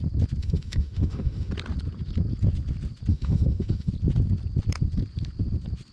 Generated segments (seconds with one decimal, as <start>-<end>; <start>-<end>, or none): 0.4-1.5; 3.1-3.9